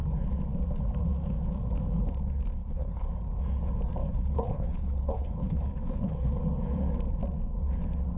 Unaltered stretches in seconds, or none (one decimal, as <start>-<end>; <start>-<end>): 0.0-2.6; 3.1-4.0; 6.4-8.2